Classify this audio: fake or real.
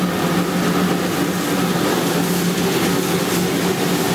real